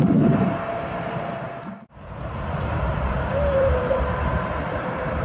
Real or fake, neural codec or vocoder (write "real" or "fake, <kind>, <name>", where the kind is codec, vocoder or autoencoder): fake, vocoder, BigVGAN v2